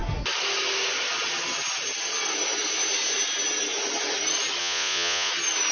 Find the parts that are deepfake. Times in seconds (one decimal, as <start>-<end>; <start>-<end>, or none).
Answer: 4.6-5.3